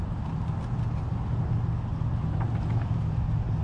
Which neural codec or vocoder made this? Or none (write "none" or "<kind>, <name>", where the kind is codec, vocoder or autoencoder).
none